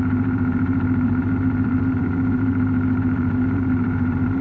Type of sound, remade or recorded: remade